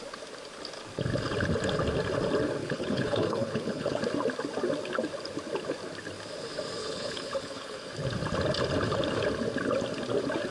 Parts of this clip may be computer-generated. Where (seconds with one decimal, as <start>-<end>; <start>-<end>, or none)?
2.6-4.0; 6.8-7.9